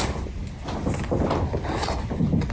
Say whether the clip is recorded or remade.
recorded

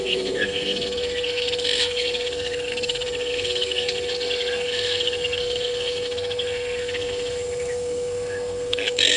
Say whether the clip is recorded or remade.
remade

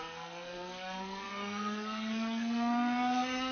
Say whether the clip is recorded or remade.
remade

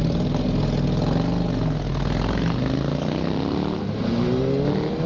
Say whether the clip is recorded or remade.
recorded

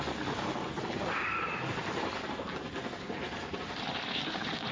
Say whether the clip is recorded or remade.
recorded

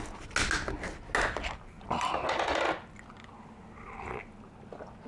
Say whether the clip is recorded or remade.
recorded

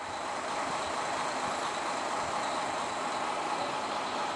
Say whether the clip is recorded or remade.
recorded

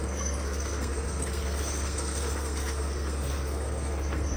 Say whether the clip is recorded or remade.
remade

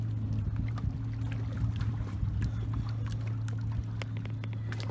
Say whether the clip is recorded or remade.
recorded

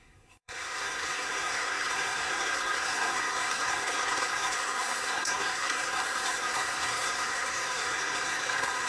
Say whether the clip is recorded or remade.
remade